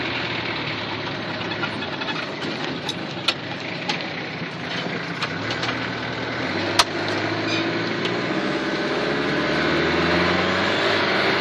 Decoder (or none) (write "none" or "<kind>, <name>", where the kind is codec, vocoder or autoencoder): none